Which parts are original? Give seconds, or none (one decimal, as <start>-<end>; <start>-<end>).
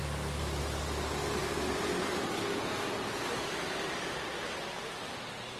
0.0-5.6